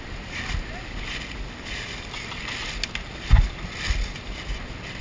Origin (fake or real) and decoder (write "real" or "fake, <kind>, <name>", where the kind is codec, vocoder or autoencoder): real